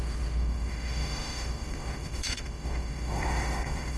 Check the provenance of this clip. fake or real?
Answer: fake